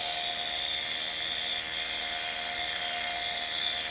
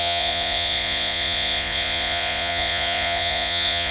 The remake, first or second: second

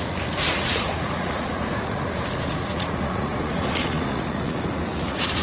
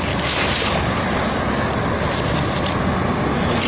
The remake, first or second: first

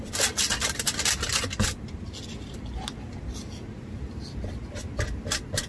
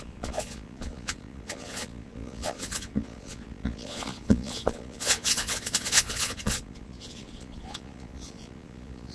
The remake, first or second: second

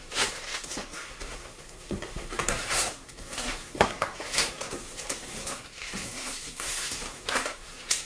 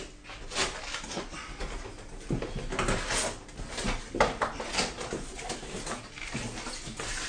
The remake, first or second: first